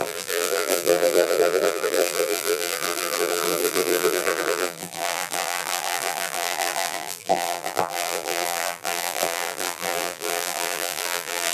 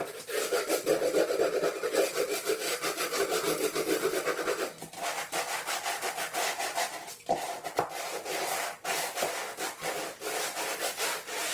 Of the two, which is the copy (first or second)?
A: first